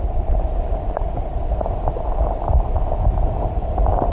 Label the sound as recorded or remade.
remade